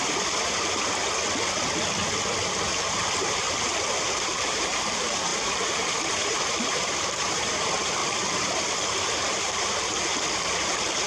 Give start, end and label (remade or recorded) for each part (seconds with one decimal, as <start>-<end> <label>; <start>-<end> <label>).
0.0-1.0 remade; 1.0-2.4 recorded; 2.4-11.1 remade